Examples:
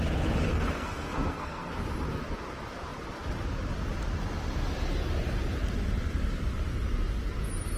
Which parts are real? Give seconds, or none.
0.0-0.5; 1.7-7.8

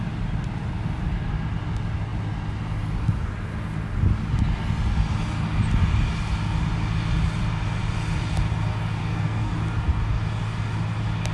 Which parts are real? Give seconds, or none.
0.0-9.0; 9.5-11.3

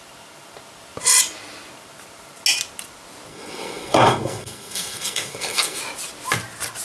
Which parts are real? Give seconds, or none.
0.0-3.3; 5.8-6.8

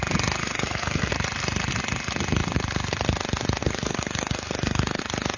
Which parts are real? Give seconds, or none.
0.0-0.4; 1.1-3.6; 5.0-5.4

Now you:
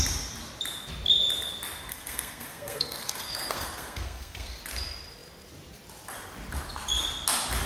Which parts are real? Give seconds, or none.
0.0-1.9; 4.6-7.7